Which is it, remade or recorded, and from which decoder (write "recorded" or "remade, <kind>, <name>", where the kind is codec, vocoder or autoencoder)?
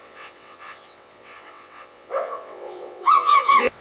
remade, vocoder, WaveNeXt